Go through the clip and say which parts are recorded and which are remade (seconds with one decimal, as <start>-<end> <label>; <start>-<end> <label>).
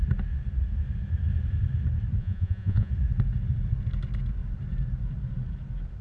0.0-2.2 recorded; 2.2-2.9 remade; 2.9-6.0 recorded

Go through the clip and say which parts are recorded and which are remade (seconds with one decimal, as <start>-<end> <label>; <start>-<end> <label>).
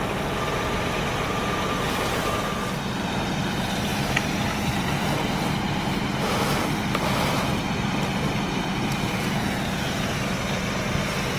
0.0-8.7 recorded; 8.7-10.2 remade; 10.2-11.4 recorded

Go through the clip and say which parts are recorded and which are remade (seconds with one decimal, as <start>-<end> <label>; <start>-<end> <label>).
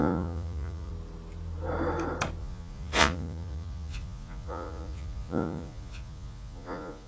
0.0-0.9 remade; 0.9-2.4 recorded; 2.4-7.1 remade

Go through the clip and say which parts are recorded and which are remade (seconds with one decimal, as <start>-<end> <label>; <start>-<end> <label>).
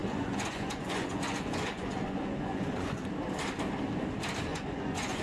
0.0-3.1 remade; 3.1-4.5 recorded; 4.5-5.2 remade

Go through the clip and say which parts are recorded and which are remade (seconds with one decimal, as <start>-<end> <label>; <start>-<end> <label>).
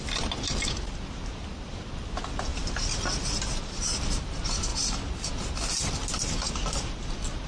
0.0-7.5 recorded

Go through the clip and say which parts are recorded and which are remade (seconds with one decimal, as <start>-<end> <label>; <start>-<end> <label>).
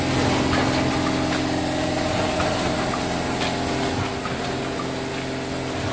0.0-5.9 recorded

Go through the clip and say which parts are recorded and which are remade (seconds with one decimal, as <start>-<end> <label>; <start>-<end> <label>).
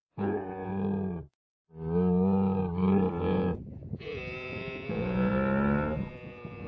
0.0-0.7 remade; 0.7-3.1 recorded; 3.1-5.3 remade; 5.3-6.1 recorded; 6.1-6.7 remade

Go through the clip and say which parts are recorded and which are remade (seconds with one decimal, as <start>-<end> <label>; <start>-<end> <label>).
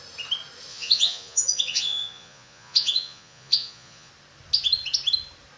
0.0-0.7 recorded; 0.7-4.1 remade; 4.1-5.6 recorded